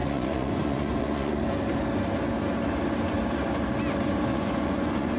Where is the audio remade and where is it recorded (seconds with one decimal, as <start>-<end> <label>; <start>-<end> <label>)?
0.0-1.5 remade; 1.5-4.3 recorded; 4.3-5.2 remade